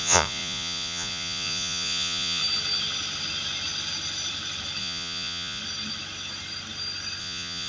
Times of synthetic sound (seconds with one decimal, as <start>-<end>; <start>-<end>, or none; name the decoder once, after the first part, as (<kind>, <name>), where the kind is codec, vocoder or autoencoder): 0.0-2.4 (vocoder, Vocos); 4.8-5.6; 7.2-7.7